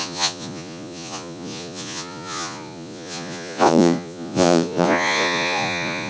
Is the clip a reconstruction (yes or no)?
yes